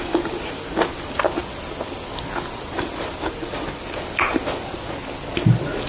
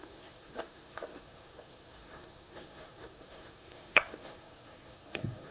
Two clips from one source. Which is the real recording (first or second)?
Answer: first